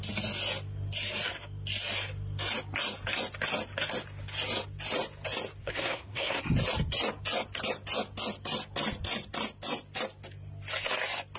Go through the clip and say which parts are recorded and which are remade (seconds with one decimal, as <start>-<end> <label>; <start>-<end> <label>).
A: 0.0-5.6 recorded; 5.6-6.4 remade; 6.4-11.4 recorded